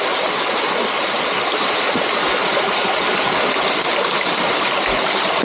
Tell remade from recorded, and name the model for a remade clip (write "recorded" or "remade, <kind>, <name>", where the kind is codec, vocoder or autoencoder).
recorded